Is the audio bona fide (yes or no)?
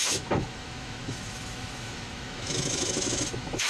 no